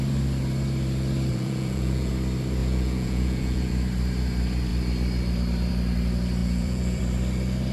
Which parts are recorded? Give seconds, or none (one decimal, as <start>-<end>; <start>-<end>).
0.0-1.3; 2.1-2.6; 3.7-6.4; 7.0-7.7